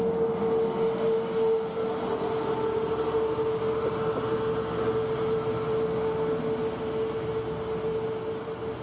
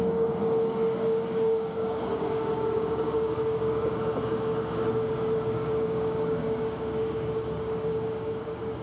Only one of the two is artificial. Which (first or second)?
second